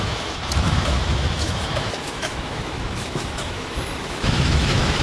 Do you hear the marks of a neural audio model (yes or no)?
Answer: yes